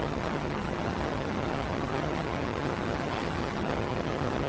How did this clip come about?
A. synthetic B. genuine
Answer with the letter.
A